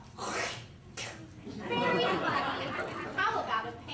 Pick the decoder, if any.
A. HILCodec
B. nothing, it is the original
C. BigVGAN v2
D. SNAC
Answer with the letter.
B